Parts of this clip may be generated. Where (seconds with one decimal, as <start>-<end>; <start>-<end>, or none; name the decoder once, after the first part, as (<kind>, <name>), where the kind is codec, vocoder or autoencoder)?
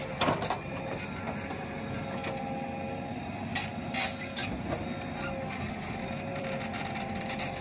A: 3.1-3.9 (vocoder, BigVGAN v2); 6.3-7.6